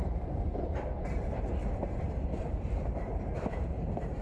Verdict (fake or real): fake